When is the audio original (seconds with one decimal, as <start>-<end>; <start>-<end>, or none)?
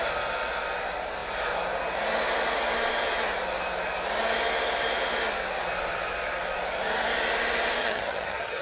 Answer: 0.0-7.8